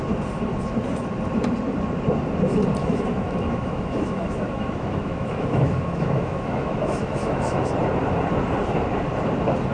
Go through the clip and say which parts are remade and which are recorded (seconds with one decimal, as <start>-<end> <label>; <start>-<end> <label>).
0.0-2.8 recorded; 2.8-7.7 remade; 7.7-9.7 recorded